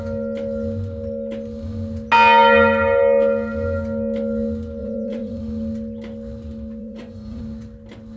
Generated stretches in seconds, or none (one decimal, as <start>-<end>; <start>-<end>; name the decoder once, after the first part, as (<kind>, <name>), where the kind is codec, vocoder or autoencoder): 4.8-5.4 (vocoder, Vocos); 6.8-7.4